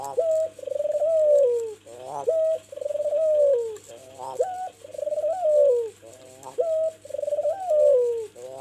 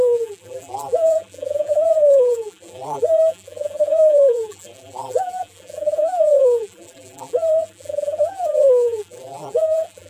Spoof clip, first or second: second